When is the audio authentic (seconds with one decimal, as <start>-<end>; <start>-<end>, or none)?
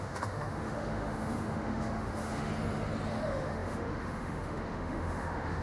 2.5-3.1